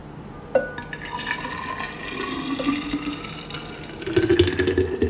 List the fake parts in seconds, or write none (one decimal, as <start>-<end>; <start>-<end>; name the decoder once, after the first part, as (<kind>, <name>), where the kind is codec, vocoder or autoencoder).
none